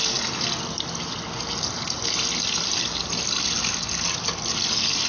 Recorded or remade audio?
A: recorded